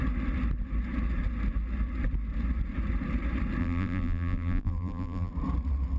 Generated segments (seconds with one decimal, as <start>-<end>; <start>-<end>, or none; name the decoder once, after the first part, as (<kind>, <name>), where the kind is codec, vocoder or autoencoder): 3.6-5.3 (vocoder, BigVGAN v2)